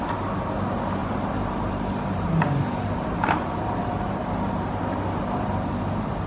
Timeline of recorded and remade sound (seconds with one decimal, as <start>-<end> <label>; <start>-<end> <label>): 0.0-1.0 recorded; 1.0-4.5 remade; 4.5-6.3 recorded